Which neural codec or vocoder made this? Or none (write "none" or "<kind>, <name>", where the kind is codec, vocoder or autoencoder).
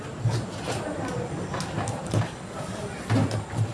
none